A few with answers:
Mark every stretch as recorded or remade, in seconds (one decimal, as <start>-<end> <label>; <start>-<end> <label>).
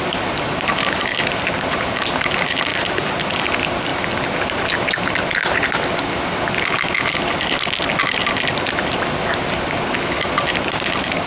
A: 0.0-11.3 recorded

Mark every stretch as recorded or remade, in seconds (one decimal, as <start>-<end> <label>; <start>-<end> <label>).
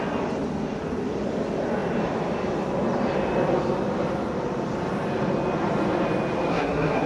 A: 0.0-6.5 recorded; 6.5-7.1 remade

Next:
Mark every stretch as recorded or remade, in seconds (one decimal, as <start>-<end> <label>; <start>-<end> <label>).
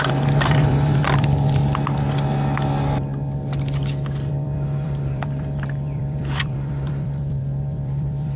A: 0.0-1.6 remade; 1.6-4.3 recorded; 4.3-8.4 remade